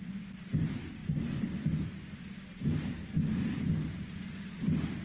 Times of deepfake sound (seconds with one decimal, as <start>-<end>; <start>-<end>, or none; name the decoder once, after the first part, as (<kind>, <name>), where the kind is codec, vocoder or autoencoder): none

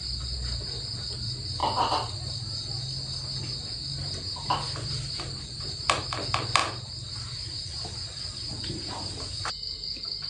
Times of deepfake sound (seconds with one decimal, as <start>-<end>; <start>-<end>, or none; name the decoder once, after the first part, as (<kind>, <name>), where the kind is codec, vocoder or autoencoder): none

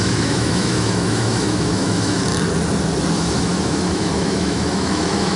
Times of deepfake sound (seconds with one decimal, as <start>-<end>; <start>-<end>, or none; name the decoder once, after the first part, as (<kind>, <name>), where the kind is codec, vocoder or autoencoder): 0.0-2.3 (autoencoder, DAC-VAE); 3.1-5.4

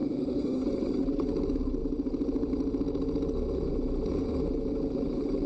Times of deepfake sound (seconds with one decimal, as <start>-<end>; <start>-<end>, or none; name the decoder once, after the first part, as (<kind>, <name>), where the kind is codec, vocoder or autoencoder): 0.0-0.6 (autoencoder, DAC-VAE)